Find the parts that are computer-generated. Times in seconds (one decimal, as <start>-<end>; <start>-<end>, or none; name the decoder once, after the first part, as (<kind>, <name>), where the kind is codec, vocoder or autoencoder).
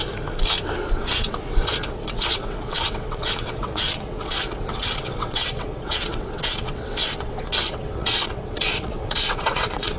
1.0-10.0 (vocoder, WaveNeXt)